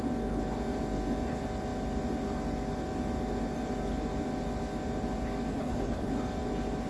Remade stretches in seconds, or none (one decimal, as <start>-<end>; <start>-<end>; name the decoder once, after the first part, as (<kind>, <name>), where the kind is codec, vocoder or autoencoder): 5.5-6.1 (codec, HILCodec)